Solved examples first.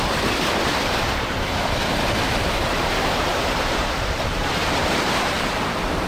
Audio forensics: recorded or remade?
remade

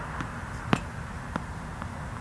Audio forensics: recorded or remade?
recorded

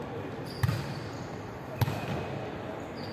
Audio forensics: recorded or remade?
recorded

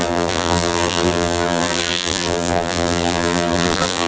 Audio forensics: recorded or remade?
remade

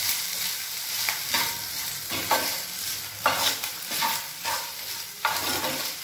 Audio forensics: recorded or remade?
remade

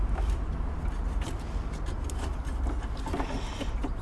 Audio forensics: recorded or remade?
recorded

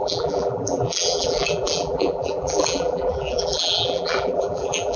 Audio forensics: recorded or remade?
remade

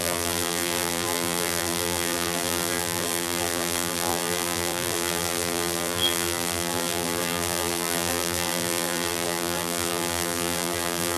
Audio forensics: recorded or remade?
remade